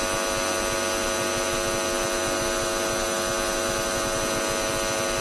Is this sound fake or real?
real